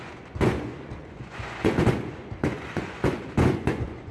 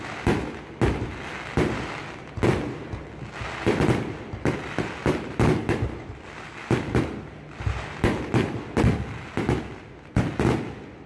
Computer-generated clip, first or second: first